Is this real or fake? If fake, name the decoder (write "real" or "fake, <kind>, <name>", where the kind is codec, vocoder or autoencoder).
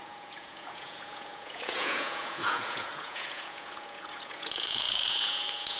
fake, vocoder, Vocos